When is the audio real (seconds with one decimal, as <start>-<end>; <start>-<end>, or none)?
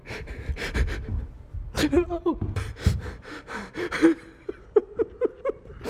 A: none